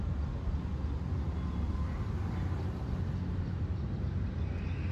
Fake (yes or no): no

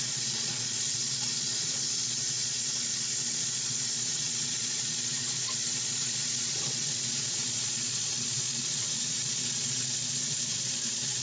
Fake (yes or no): yes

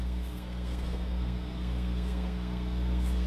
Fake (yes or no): yes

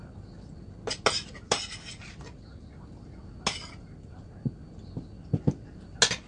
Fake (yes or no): no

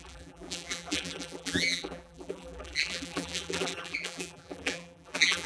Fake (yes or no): yes